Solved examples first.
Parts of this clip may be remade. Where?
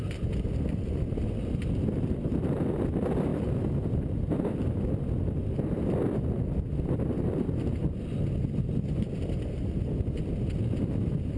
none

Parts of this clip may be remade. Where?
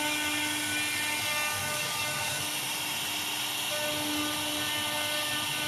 1.6-2.4